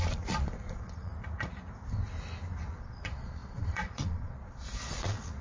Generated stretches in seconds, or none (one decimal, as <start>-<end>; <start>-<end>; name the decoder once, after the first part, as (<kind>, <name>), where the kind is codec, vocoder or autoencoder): 0.0-1.1 (vocoder, Vocos); 2.7-5.4